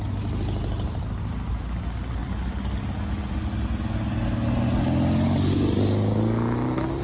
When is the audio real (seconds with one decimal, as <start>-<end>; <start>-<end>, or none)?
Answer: 0.0-7.0